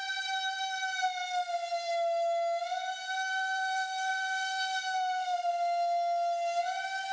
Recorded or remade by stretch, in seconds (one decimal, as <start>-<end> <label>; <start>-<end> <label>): 0.0-3.3 recorded; 3.3-5.5 remade; 5.5-7.1 recorded